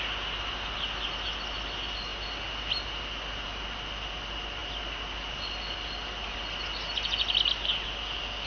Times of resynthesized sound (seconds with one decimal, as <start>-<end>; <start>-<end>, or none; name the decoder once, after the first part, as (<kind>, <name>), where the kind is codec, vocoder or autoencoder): none